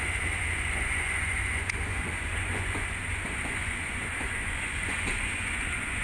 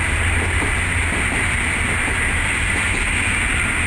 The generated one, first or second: first